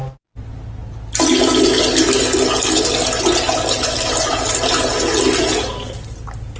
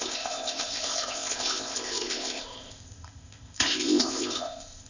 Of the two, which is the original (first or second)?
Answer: first